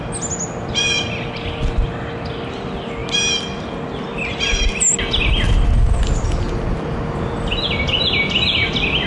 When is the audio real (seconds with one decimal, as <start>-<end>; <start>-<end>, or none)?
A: 0.0-9.1